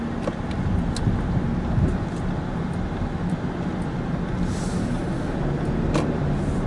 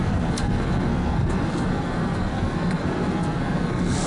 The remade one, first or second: second